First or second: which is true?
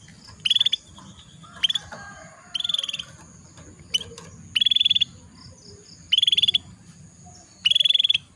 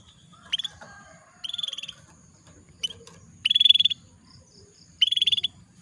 first